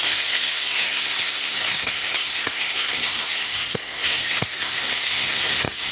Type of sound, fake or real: fake